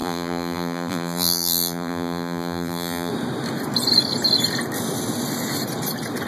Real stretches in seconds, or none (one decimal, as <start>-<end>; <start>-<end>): 3.1-6.3

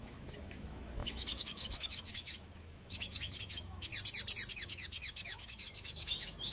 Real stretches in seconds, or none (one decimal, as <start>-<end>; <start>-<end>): 3.9-4.5

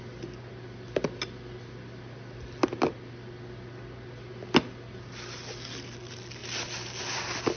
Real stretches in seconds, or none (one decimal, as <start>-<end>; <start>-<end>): 0.0-7.6

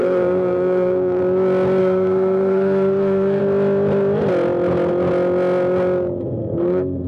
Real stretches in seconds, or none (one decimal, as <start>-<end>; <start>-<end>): 1.2-1.8; 3.4-6.2

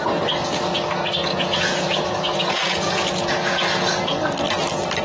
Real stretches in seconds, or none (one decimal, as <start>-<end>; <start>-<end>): 0.0-1.2; 4.0-5.0